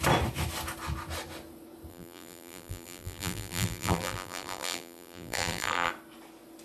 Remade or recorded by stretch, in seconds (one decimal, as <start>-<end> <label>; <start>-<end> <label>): 0.0-1.9 recorded; 1.9-5.9 remade; 5.9-6.6 recorded

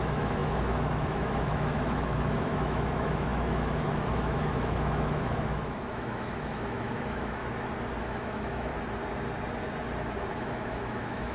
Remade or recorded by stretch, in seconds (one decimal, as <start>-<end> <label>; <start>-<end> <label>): 0.0-7.4 remade; 7.4-8.0 recorded; 8.0-8.7 remade; 8.7-10.3 recorded; 10.3-11.3 remade

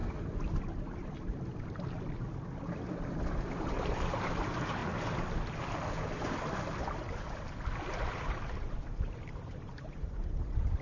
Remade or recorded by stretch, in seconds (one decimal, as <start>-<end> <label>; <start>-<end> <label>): 0.0-3.5 recorded; 3.5-4.8 remade; 4.8-8.2 recorded; 8.2-10.8 remade

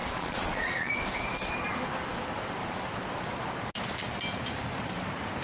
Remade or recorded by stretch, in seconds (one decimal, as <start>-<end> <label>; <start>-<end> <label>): 0.0-0.9 remade; 0.9-5.4 recorded

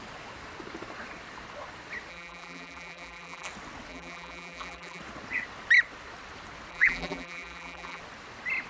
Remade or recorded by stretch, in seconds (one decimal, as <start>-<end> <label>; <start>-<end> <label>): 0.0-2.1 recorded; 2.1-3.5 remade; 3.5-3.9 recorded; 3.9-5.0 remade; 5.0-6.7 recorded; 6.7-8.0 remade; 8.0-8.7 recorded

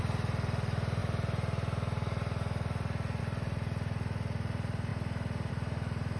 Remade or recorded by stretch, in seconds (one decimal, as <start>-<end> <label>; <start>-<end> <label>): 0.0-1.0 remade; 1.0-3.2 recorded; 3.2-4.9 remade; 4.9-5.5 recorded; 5.5-6.2 remade

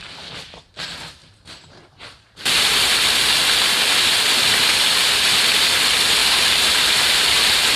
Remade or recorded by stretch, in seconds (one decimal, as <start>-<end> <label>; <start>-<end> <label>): 0.0-1.2 recorded; 1.2-2.7 remade; 2.7-6.2 recorded; 6.2-7.8 remade

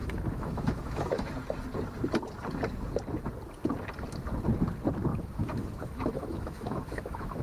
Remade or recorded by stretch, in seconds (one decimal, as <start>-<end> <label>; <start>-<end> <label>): 0.0-1.3 remade; 1.3-5.1 recorded; 5.1-7.4 remade